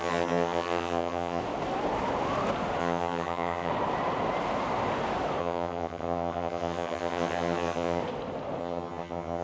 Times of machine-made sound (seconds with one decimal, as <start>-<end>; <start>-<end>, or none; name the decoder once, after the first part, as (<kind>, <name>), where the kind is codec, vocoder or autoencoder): 0.0-1.4 (vocoder, HiFi-GAN); 2.8-3.7; 5.4-8.0; 8.6-9.4